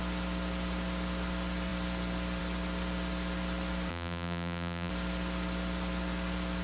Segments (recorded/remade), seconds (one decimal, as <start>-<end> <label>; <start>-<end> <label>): 0.0-3.9 recorded; 3.9-4.9 remade; 4.9-6.6 recorded